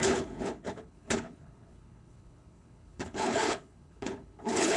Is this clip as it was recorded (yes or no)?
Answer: no